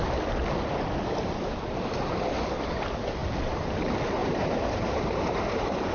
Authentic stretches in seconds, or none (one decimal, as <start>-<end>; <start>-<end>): 0.0-3.2; 3.8-4.2